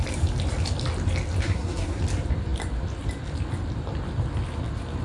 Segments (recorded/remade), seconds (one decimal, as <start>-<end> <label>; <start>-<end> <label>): 0.0-1.4 recorded; 1.4-2.0 remade; 2.0-5.0 recorded